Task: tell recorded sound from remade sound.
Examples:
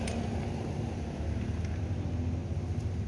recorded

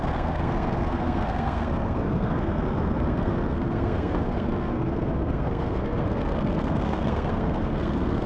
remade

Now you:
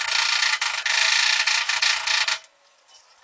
recorded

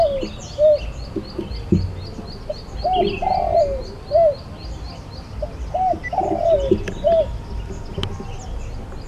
recorded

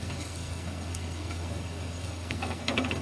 remade